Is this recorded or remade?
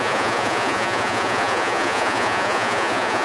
remade